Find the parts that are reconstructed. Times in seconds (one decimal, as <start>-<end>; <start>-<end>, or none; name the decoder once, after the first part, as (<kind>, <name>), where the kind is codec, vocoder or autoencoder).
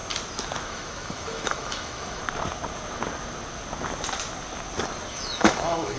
0.7-2.2 (autoencoder, DAC-VAE); 5.1-6.0